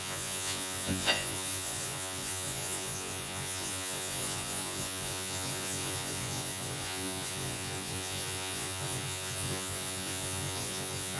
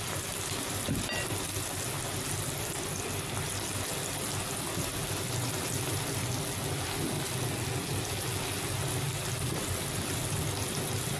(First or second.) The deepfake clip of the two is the first